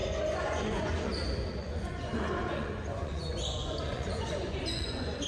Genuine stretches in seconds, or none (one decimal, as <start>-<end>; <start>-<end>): 1.1-1.6